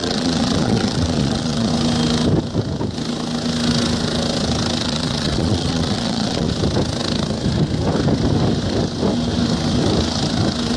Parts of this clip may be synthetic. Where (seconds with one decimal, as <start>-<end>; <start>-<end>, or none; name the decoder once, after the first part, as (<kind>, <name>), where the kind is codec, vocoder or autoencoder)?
0.0-1.7 (vocoder, Vocos); 4.8-6.5